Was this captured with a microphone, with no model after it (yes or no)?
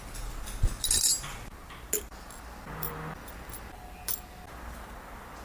yes